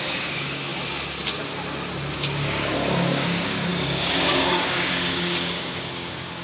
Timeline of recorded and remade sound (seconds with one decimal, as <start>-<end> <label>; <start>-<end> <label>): 0.0-0.7 remade; 0.7-2.1 recorded; 2.1-6.4 remade